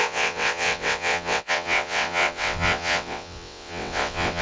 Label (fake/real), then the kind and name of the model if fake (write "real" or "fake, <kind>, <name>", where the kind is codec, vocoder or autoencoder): fake, vocoder, WaveNeXt